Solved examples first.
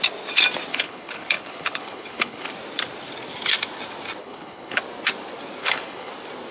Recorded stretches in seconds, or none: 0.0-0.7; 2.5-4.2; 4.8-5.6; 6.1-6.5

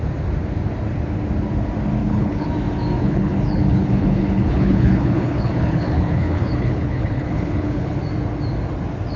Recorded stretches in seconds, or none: 0.0-2.0; 2.5-3.0; 8.0-9.2

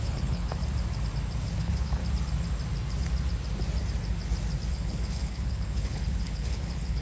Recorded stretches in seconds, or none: 0.6-1.6; 2.0-4.7

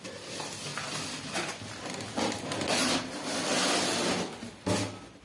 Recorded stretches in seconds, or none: 0.0-5.2